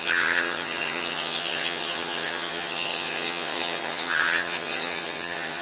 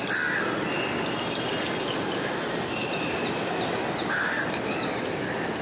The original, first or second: second